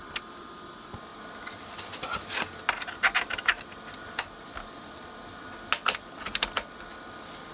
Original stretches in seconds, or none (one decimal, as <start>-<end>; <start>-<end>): 0.0-7.5